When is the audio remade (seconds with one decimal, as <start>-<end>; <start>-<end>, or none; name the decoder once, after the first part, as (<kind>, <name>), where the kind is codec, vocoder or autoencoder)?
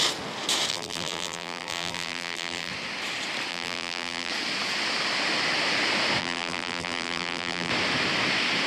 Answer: 0.7-2.7 (vocoder, BigVGAN v2); 3.5-4.3; 6.2-7.7